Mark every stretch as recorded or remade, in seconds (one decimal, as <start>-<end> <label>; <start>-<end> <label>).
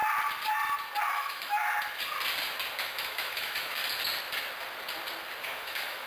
0.0-1.1 recorded; 1.1-1.6 remade; 1.6-2.8 recorded; 2.8-3.8 remade; 3.8-5.4 recorded; 5.4-6.1 remade